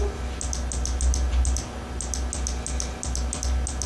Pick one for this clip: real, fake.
real